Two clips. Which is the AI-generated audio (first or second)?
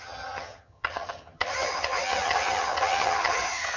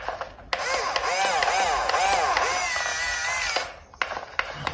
first